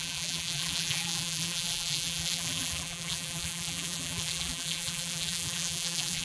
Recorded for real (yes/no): no